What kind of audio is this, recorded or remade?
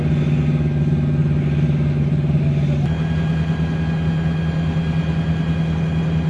recorded